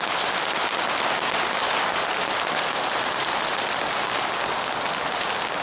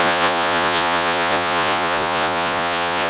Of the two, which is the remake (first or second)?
second